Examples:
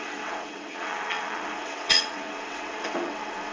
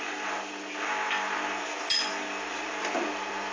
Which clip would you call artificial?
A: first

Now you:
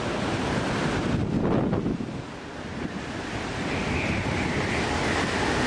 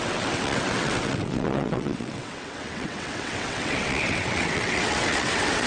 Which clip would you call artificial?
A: second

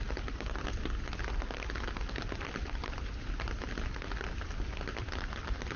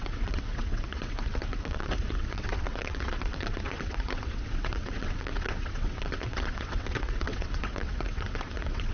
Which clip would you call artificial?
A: second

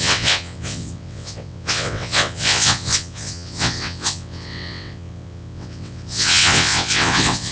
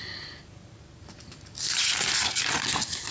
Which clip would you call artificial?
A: first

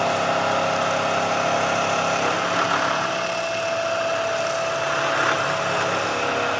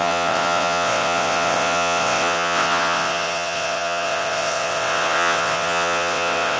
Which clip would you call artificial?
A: second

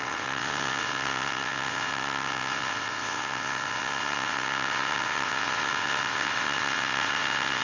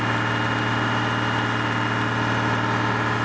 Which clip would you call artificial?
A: first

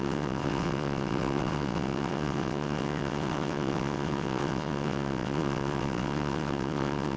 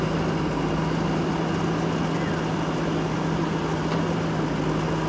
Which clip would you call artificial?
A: first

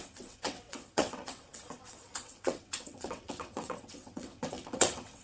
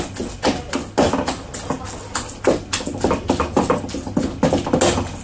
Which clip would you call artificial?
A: first